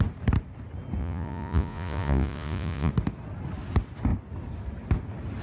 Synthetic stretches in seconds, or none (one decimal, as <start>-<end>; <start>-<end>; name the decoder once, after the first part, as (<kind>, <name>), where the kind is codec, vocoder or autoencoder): 1.0-2.9 (vocoder, Vocos)